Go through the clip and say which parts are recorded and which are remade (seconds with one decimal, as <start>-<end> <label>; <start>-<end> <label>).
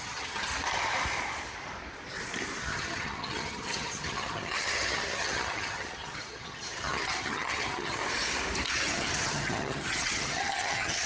0.0-0.5 remade; 0.5-2.6 recorded; 2.6-8.0 remade; 8.0-8.7 recorded; 8.7-11.1 remade